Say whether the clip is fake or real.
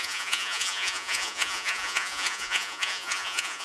fake